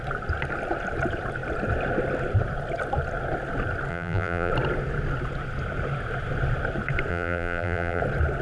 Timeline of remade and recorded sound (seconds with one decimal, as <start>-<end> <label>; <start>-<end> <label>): 0.0-3.9 recorded; 3.9-4.5 remade; 4.5-7.1 recorded; 7.1-8.0 remade; 8.0-8.4 recorded